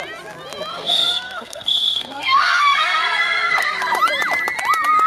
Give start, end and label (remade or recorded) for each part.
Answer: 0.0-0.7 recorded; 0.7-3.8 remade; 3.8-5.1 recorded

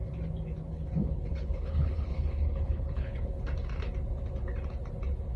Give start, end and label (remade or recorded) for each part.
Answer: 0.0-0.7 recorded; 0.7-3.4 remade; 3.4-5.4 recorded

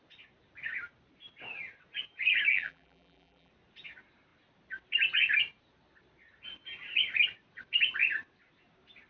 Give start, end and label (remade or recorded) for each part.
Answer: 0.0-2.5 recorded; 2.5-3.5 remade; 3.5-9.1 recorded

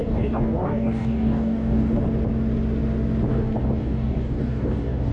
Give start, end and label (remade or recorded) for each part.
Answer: 0.0-2.0 remade; 2.0-3.3 recorded; 3.3-5.1 remade

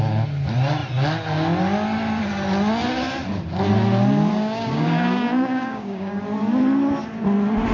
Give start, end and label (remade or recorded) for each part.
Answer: 0.0-4.3 recorded; 4.3-6.2 remade; 6.2-7.7 recorded

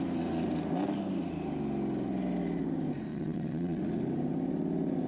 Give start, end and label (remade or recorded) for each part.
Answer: 0.0-3.1 recorded; 3.1-3.8 remade; 3.8-5.1 recorded

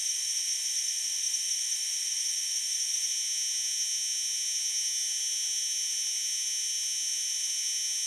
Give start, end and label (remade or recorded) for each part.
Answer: 0.0-3.1 remade; 3.1-8.1 recorded